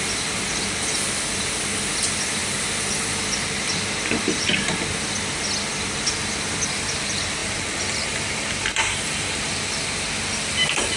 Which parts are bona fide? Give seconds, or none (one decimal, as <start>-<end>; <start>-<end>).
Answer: 0.0-7.4; 9.5-11.0